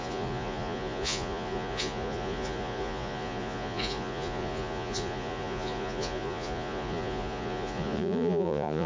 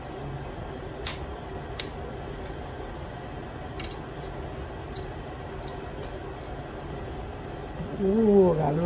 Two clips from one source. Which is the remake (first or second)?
first